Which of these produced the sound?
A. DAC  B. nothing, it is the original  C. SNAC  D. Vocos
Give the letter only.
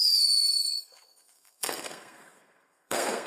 C